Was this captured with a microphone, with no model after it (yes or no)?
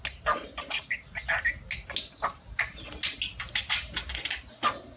yes